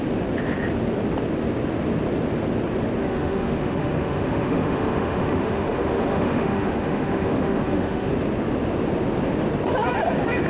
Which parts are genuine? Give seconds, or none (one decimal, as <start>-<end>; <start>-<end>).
0.0-3.0; 8.1-10.5